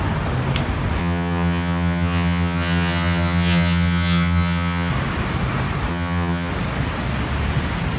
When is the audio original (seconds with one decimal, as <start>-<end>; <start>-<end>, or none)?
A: 0.0-1.0; 4.9-5.9; 6.5-8.0